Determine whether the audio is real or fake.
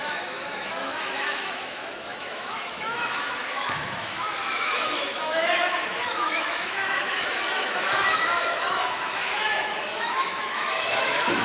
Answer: fake